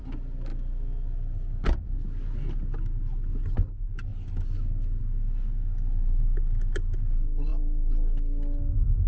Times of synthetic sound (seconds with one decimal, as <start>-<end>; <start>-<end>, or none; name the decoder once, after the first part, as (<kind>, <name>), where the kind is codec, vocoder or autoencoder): none